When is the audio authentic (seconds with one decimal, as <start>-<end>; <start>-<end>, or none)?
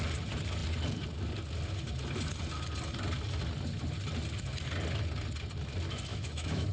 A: 0.0-6.1